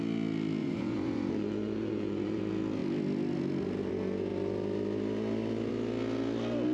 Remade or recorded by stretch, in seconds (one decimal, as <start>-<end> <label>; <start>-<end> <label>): 0.0-0.6 recorded; 0.6-2.4 remade; 2.4-6.7 recorded